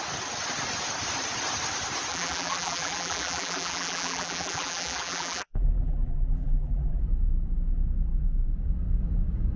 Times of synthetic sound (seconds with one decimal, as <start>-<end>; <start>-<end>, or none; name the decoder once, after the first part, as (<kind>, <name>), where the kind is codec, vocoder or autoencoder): 2.1-7.0 (vocoder, BigVGAN v2)